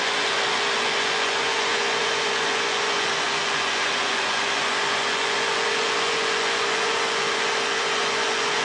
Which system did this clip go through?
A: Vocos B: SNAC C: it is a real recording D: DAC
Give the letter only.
A